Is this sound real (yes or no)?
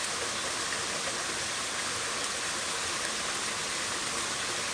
yes